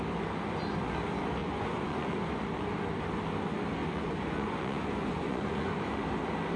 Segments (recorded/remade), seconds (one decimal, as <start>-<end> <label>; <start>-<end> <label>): 0.0-1.4 recorded; 1.4-2.4 remade; 2.4-3.8 recorded; 3.8-5.9 remade; 5.9-6.6 recorded